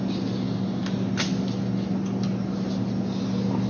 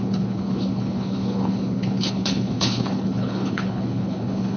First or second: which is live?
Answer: first